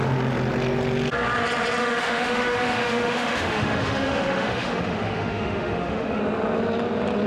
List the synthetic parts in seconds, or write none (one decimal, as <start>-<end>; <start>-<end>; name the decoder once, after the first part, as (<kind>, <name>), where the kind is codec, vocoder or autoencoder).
1.8-6.2 (autoencoder, DAC-VAE)